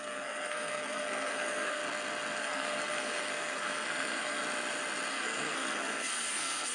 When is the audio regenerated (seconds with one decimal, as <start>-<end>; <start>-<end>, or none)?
0.0-1.8; 2.4-4.4; 5.1-6.7